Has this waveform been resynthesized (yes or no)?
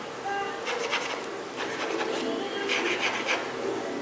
no